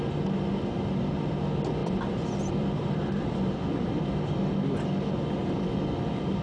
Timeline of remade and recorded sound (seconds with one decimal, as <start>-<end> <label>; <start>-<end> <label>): 0.0-1.8 recorded; 1.8-4.5 remade; 4.5-5.4 recorded; 5.4-6.0 remade; 6.0-6.4 recorded